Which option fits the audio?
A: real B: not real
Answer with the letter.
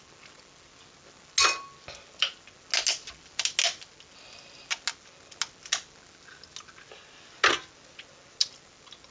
A